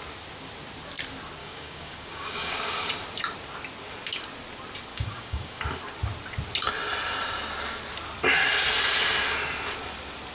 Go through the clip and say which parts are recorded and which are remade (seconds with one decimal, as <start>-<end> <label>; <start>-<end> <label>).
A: 0.0-1.4 recorded; 1.4-2.5 remade; 2.5-4.9 recorded; 4.9-5.6 remade; 5.6-10.3 recorded